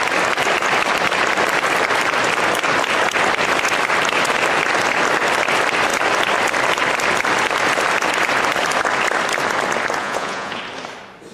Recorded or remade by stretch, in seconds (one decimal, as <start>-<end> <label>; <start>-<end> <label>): 0.0-10.0 recorded; 10.0-10.6 remade; 10.6-11.3 recorded